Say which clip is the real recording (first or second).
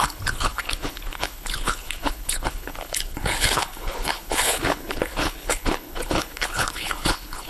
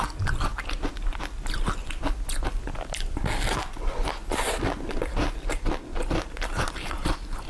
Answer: second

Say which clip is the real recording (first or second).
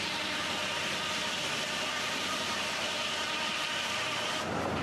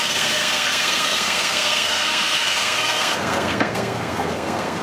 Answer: first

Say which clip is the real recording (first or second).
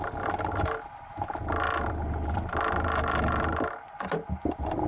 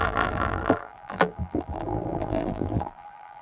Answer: first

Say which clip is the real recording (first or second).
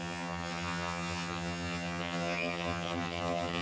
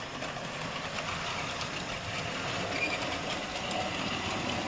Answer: second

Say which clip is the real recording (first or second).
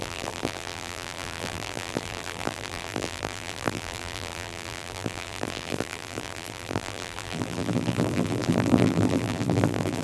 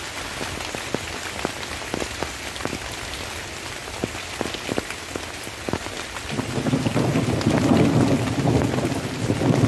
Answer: second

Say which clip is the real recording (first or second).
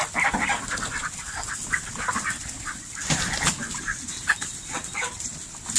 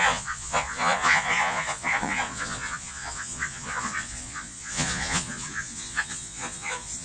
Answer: first